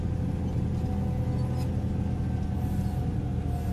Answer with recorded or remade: recorded